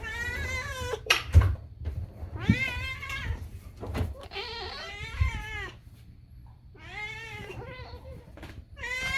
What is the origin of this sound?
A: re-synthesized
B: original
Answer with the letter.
A